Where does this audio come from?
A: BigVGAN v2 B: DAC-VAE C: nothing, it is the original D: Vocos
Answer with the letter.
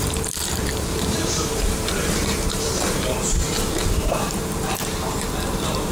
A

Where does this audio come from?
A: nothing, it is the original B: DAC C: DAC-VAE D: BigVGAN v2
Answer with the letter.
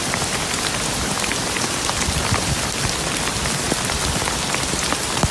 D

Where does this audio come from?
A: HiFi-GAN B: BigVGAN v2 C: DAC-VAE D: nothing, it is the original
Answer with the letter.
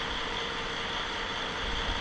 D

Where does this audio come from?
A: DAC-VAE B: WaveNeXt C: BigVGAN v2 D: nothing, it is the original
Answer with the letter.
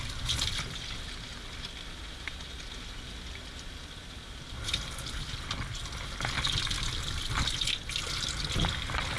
D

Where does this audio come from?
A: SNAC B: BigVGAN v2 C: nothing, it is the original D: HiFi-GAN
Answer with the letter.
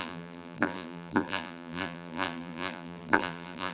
B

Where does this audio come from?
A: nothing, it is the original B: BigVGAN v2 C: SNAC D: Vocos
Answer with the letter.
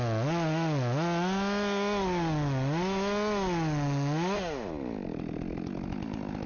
A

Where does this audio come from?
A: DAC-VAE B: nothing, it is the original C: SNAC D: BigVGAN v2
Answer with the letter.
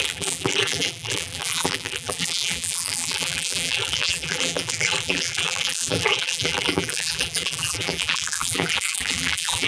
D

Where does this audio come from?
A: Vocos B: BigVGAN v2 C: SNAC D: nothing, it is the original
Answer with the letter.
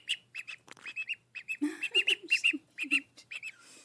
B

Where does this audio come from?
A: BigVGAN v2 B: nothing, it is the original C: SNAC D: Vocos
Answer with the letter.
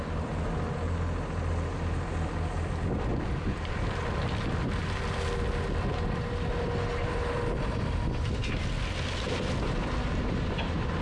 B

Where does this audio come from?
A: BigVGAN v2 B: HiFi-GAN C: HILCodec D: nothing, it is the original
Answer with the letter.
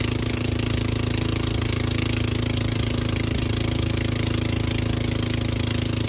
D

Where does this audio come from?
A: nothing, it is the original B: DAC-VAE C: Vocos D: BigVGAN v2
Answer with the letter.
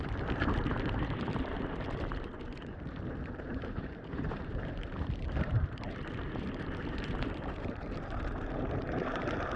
D